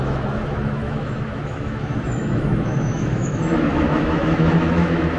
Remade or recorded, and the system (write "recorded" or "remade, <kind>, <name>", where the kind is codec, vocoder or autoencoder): remade, autoencoder, DAC-VAE